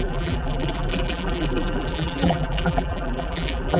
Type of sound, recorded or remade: remade